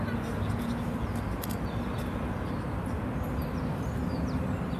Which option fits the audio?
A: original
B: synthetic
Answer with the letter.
A